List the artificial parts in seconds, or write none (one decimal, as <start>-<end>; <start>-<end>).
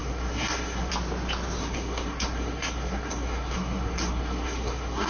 0.0-0.9; 1.6-5.1